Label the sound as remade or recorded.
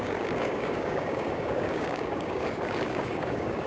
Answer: remade